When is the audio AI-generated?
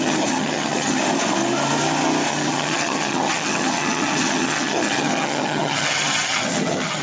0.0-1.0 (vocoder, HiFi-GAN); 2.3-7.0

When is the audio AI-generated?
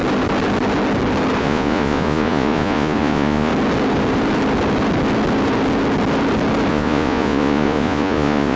1.4-3.5 (vocoder, Vocos); 6.7-8.6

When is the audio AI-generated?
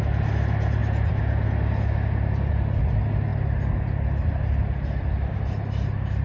none